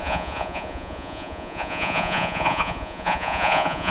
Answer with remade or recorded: remade